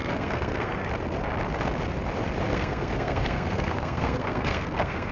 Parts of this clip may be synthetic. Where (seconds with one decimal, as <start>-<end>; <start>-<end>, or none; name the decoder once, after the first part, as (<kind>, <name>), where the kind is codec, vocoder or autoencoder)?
0.0-0.9 (codec, SNAC); 2.5-5.1